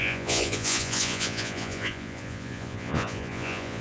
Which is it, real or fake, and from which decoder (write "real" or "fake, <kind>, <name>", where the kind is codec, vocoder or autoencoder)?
fake, vocoder, Vocos